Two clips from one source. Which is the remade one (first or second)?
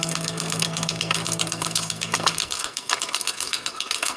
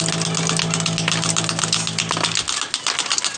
first